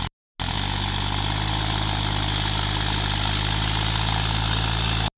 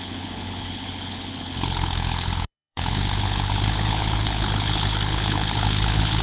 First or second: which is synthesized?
second